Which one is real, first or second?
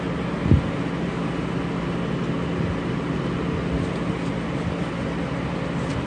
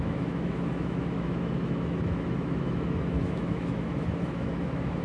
first